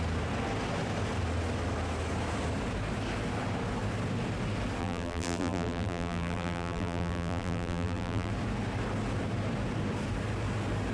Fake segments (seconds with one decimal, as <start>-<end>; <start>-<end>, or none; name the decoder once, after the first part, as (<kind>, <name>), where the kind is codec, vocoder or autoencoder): 4.8-8.3 (vocoder, BigVGAN v2)